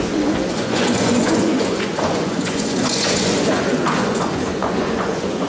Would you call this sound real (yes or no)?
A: no